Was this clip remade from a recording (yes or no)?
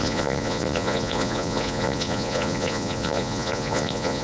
yes